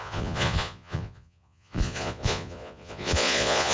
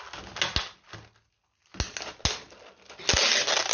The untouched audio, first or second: second